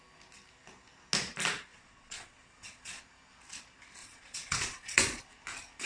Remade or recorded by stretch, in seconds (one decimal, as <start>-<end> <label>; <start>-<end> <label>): 0.0-1.7 recorded; 1.7-3.0 remade; 3.0-4.0 recorded; 4.0-5.2 remade; 5.2-5.9 recorded